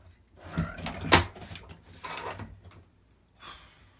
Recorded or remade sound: recorded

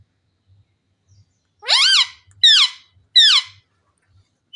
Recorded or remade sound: recorded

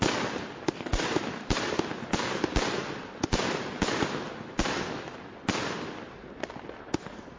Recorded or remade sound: recorded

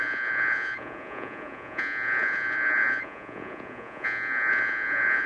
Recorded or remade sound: remade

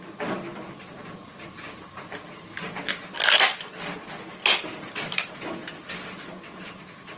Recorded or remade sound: recorded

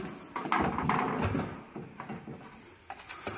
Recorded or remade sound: recorded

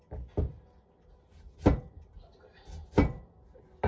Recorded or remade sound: recorded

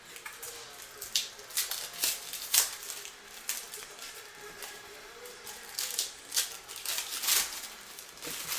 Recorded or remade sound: recorded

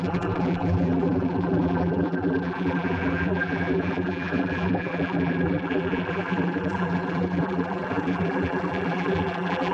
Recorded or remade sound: remade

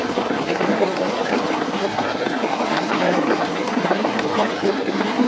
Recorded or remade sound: remade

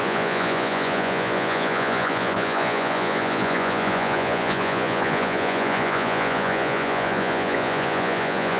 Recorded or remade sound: remade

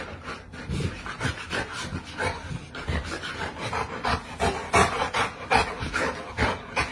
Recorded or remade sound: recorded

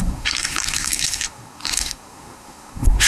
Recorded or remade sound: remade